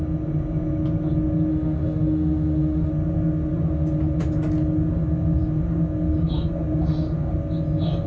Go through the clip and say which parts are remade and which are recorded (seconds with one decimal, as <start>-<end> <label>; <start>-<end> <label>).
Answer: 0.0-1.5 recorded; 1.5-2.9 remade; 2.9-8.1 recorded